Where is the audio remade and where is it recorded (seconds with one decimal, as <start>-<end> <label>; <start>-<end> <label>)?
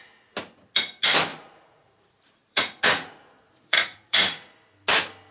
0.0-1.3 recorded; 1.3-4.5 remade; 4.5-5.3 recorded